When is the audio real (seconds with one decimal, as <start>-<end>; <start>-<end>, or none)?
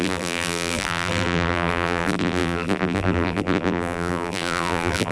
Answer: none